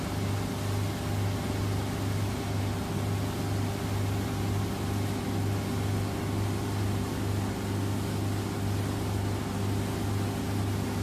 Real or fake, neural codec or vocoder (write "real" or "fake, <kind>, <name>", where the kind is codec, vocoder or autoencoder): real